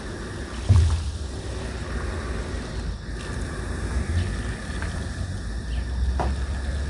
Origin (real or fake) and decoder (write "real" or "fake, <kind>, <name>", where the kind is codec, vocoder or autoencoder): real